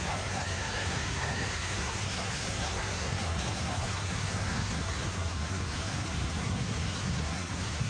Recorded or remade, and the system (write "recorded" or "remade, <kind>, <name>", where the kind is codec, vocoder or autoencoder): remade, codec, SNAC